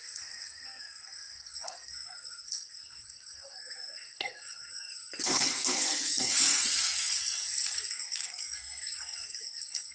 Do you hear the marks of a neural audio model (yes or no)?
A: yes